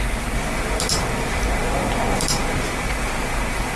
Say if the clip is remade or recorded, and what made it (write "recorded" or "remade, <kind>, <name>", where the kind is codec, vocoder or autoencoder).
recorded